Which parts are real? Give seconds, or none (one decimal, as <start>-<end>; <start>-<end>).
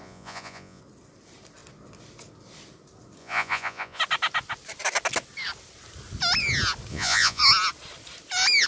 0.8-3.2; 4.0-6.9; 7.4-8.7